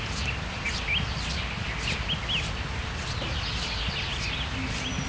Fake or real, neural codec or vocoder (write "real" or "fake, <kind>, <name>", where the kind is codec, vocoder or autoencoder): real